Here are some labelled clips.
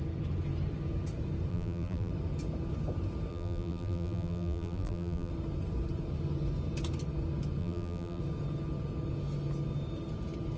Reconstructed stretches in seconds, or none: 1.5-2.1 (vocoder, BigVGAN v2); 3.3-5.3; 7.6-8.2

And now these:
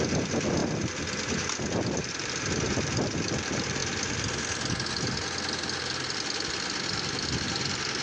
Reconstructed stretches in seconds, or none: 0.0-0.6 (vocoder, BigVGAN v2); 2.0-3.8; 7.5-8.0